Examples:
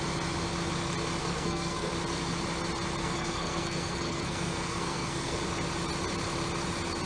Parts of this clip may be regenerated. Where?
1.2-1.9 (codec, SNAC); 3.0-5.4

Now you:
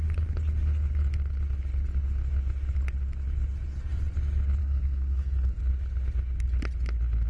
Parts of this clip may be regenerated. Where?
4.6-5.6 (codec, SNAC)